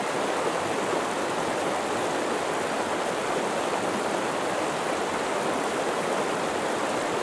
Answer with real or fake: real